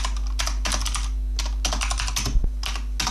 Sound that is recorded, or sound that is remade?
recorded